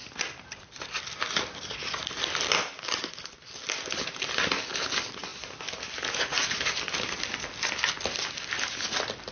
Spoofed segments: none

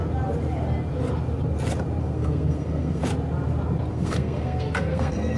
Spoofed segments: 2.0-3.0; 3.9-5.4

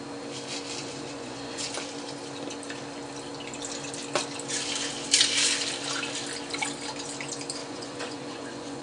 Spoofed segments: 0.8-1.7; 7.6-8.8

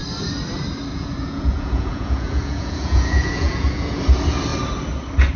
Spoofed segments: 0.9-4.0